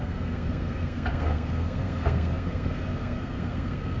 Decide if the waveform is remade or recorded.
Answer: remade